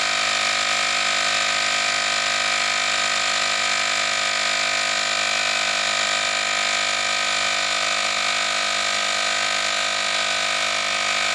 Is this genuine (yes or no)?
yes